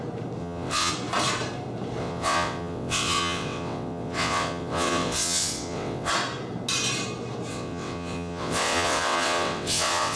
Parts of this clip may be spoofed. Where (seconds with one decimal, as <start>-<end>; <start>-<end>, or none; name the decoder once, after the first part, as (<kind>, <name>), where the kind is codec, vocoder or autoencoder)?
0.4-0.9 (vocoder, WaveNeXt); 2.0-6.1; 7.5-10.2